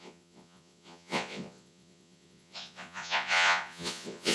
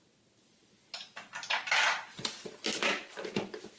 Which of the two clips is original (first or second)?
second